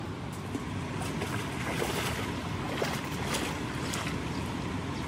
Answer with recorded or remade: recorded